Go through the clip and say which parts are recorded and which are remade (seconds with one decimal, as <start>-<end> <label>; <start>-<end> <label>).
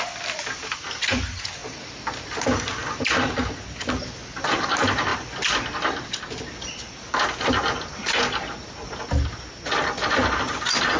0.0-11.0 recorded